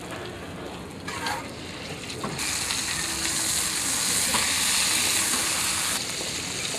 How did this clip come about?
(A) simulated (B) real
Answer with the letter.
B